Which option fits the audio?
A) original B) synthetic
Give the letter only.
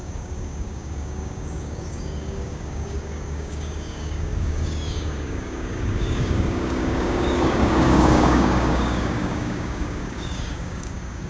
B